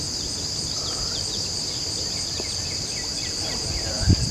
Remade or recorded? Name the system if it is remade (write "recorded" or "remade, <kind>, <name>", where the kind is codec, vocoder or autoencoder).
remade, vocoder, BigVGAN v2